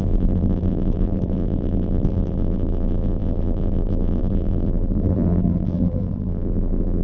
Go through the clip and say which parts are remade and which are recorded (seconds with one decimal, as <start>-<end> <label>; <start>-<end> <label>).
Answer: 0.0-7.0 remade